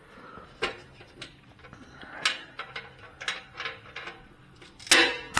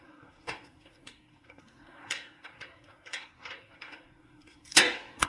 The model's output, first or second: second